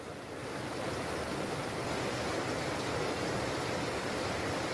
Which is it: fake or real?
real